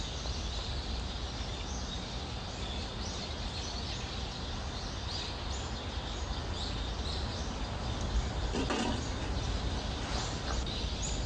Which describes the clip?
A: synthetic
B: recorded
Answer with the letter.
B